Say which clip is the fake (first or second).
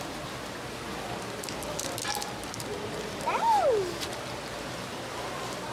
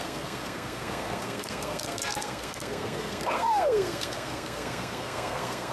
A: second